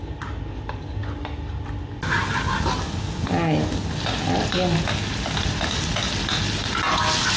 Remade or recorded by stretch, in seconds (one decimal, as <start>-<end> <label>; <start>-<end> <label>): 0.0-7.4 recorded